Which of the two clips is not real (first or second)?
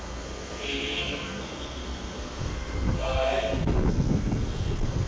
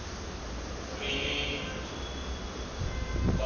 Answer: first